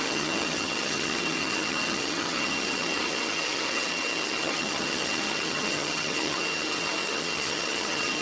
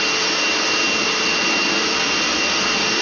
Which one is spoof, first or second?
first